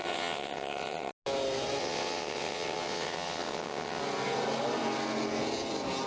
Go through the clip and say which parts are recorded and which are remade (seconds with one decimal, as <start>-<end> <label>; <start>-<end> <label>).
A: 0.0-1.1 remade; 1.1-1.8 recorded; 1.8-4.0 remade; 4.0-6.1 recorded